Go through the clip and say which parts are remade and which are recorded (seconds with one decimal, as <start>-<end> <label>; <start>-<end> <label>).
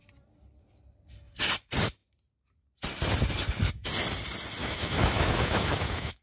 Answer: 0.0-4.6 recorded; 4.6-6.2 remade